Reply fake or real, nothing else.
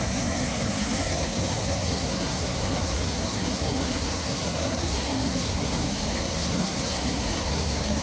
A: fake